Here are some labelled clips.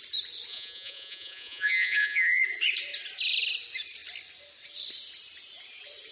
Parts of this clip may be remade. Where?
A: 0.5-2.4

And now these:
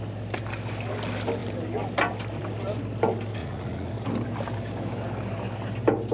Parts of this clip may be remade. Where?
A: 3.4-3.9

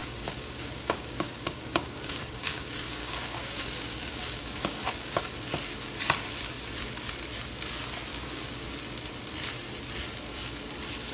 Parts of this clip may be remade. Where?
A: 0.0-5.2; 8.1-8.7

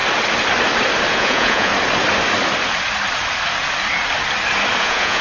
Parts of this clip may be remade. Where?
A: 1.1-1.7; 4.8-5.2

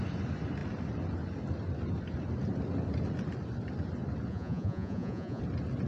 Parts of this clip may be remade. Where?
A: 4.3-5.4

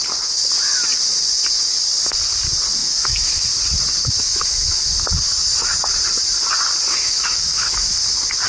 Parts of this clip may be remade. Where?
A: 2.8-3.5; 4.0-4.9; 6.9-8.0

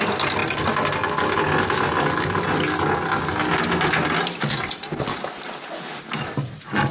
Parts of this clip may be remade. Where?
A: none

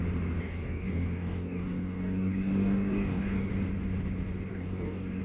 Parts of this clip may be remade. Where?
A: 0.4-3.5; 4.5-5.2